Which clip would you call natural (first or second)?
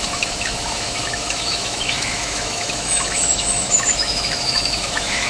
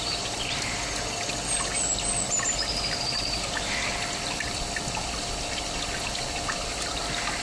second